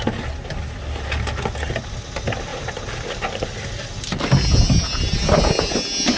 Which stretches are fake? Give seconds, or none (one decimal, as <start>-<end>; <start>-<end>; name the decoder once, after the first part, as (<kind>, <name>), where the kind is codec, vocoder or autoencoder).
none